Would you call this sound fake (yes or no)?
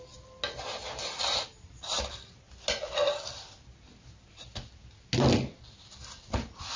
no